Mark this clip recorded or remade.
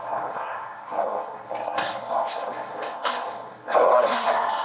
remade